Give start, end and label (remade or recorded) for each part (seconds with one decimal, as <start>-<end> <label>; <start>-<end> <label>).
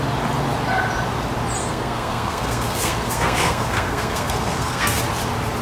0.0-1.6 recorded; 1.6-5.0 remade; 5.0-5.6 recorded